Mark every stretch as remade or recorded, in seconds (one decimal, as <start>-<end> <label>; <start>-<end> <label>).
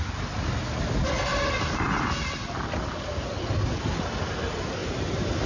0.0-1.3 recorded; 1.3-1.8 remade; 1.8-4.8 recorded; 4.8-5.5 remade